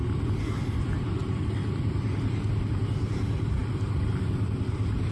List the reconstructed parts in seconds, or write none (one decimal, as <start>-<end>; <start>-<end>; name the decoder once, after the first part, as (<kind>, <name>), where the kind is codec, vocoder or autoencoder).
none